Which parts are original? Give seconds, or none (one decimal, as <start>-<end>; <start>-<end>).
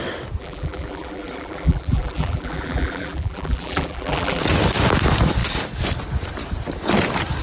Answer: 0.0-0.4; 4.4-7.4